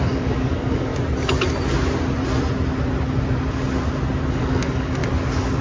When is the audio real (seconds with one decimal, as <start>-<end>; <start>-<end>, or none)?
0.9-4.3; 5.0-5.6

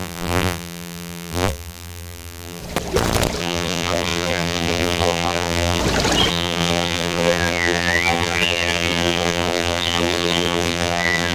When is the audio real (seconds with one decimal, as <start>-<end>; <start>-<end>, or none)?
2.6-3.4; 5.8-6.3

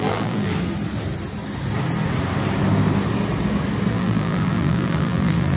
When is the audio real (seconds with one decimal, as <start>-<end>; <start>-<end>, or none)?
0.5-3.9

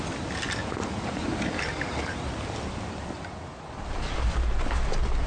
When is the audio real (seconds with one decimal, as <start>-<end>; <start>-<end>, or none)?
0.0-5.3

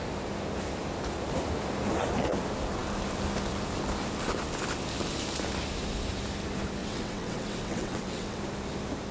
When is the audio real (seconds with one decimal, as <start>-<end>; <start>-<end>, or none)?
0.0-6.8; 8.4-9.1

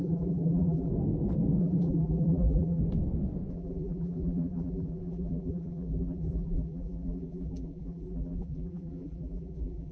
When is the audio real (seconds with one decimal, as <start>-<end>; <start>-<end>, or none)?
0.9-1.6; 2.8-3.5

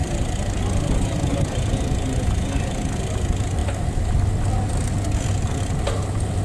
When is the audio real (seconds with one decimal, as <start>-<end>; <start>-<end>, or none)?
0.0-6.4

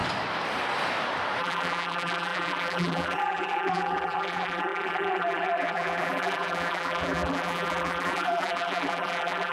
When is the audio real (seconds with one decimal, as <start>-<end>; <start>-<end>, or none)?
0.0-1.4